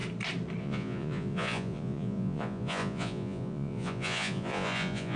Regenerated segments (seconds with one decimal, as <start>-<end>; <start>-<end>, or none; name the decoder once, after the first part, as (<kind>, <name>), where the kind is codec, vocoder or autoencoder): 0.6-5.2 (vocoder, Vocos)